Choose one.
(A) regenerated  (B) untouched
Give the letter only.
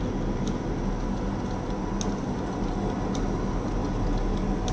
B